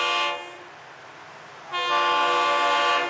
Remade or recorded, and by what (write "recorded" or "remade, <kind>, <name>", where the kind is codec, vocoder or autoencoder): recorded